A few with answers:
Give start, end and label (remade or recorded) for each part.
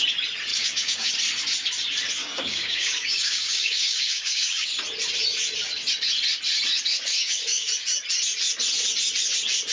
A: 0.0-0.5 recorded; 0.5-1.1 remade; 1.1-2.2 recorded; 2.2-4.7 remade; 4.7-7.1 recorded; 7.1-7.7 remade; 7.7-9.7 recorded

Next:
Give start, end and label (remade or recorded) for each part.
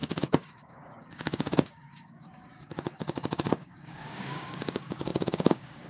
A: 0.0-5.9 remade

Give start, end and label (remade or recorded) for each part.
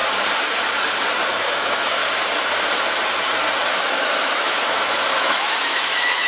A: 0.0-1.3 recorded; 1.3-2.0 remade; 2.0-3.7 recorded; 3.7-6.3 remade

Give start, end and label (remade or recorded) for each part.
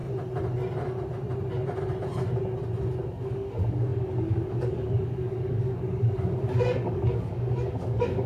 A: 0.0-3.2 recorded; 3.2-8.3 remade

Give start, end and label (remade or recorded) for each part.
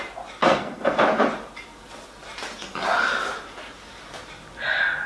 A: 0.0-0.4 recorded; 0.4-1.0 remade; 1.0-5.1 recorded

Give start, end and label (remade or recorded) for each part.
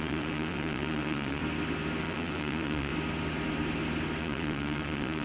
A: 0.0-1.4 remade; 1.4-2.0 recorded; 2.0-2.9 remade; 2.9-4.2 recorded; 4.2-5.2 remade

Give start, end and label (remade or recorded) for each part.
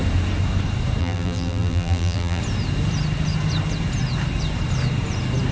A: 0.0-1.0 recorded; 1.0-2.4 remade; 2.4-5.5 recorded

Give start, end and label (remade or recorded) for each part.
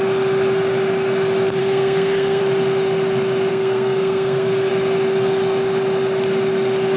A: 0.0-1.6 recorded; 1.6-2.4 remade; 2.4-3.5 recorded; 3.5-4.7 remade; 4.7-7.0 recorded